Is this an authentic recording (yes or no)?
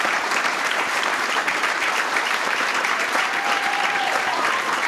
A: no